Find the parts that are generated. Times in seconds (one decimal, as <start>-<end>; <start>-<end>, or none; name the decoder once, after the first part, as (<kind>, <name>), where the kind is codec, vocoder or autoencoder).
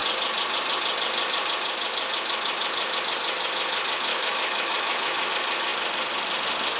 4.1-5.3 (autoencoder, DAC-VAE)